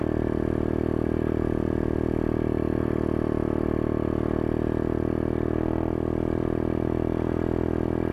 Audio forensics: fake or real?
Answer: real